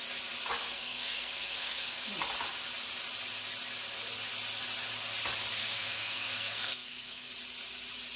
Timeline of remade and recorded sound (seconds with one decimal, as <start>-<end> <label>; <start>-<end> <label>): 0.0-0.6 recorded; 0.6-2.1 remade; 2.1-5.6 recorded; 5.6-7.3 remade; 7.3-8.2 recorded